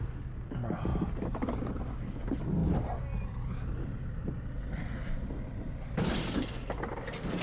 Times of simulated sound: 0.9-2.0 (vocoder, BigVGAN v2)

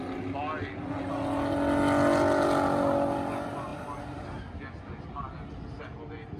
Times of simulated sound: 3.7-4.4 (vocoder, BigVGAN v2)

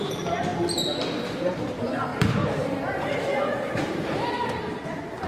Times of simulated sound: 0.0-0.5 (vocoder, BigVGAN v2); 1.3-5.3

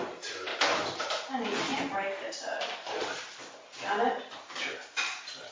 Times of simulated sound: 0.0-3.4 (vocoder, BigVGAN v2); 4.8-5.5